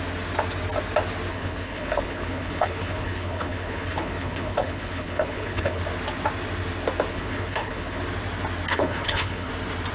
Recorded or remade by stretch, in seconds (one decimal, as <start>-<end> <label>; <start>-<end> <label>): 0.0-1.3 recorded; 1.3-5.8 remade; 5.8-7.1 recorded; 7.1-8.0 remade; 8.0-8.7 recorded; 8.7-9.5 remade; 9.5-9.9 recorded